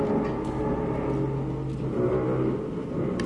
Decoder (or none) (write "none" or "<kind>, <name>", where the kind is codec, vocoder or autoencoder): none